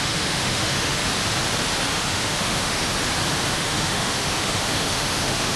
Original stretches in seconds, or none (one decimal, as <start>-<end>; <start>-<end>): 1.0-1.9; 2.9-3.5

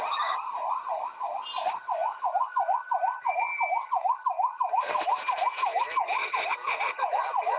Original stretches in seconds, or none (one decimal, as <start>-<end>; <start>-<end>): 0.0-7.6